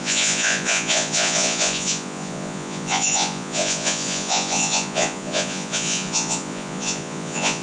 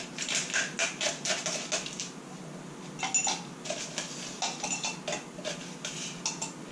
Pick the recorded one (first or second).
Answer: second